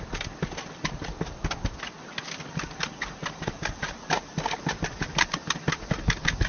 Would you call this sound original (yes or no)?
yes